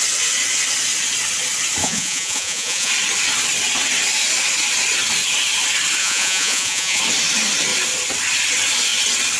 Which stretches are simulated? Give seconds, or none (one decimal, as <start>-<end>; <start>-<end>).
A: 1.8-2.9; 6.0-7.0